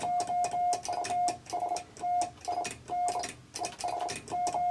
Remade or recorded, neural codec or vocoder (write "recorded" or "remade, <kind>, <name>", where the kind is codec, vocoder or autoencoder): recorded